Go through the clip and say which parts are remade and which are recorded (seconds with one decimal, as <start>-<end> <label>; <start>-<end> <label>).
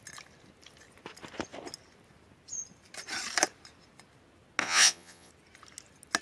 0.0-4.6 recorded; 4.6-5.3 remade; 5.3-6.2 recorded